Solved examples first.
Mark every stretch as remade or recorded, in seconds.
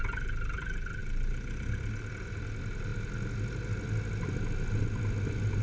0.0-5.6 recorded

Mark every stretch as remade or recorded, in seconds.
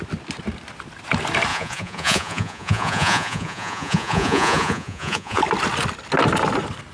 0.0-1.5 recorded; 1.5-5.4 remade; 5.4-6.9 recorded